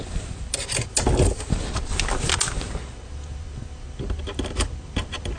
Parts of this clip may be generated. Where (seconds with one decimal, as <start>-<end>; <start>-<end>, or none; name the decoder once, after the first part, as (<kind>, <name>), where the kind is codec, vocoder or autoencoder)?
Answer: none